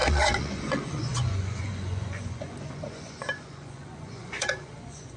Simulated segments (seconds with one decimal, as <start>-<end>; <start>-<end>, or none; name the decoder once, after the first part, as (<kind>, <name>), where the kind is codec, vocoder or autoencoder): 0.0-5.2 (vocoder, Vocos)